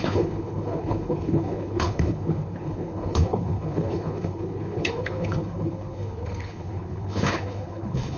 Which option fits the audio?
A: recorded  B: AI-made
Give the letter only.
B